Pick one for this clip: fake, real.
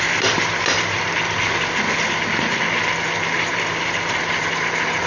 real